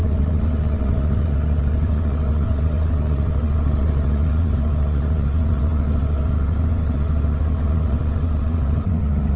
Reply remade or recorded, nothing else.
remade